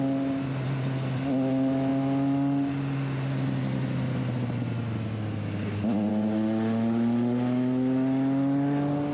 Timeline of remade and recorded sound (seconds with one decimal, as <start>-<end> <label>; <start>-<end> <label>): 0.0-9.1 recorded